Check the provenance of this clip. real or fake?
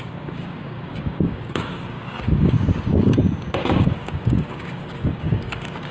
fake